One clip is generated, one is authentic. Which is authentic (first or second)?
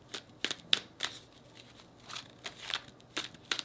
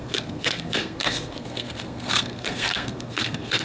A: first